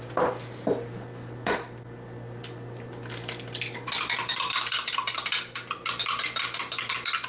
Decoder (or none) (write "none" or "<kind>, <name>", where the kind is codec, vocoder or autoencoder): none